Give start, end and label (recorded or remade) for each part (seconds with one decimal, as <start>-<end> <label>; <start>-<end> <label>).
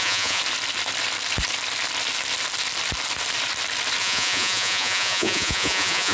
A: 0.0-0.4 remade; 0.4-4.0 recorded; 4.0-6.1 remade